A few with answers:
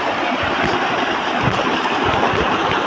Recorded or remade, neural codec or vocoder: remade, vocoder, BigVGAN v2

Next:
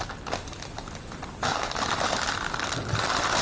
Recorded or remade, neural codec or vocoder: remade, vocoder, BigVGAN v2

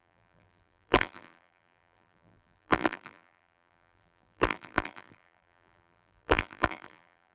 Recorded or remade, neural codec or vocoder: remade, vocoder, BigVGAN v2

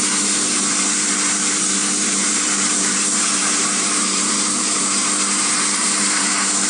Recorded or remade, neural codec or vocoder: remade, vocoder, BigVGAN v2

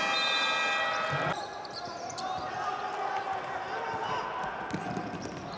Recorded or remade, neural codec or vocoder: recorded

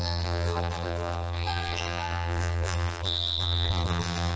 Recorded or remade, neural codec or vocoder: remade, vocoder, BigVGAN v2